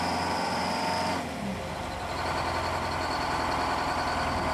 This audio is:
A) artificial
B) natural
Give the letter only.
B